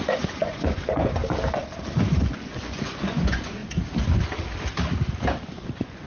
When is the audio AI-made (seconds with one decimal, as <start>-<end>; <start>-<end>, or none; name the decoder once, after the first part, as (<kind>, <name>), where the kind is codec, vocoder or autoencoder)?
0.0-1.2 (vocoder, Vocos); 2.0-3.6; 5.6-6.1